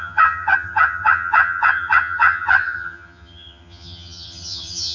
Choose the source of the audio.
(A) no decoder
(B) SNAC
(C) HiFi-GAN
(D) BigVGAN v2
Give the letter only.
C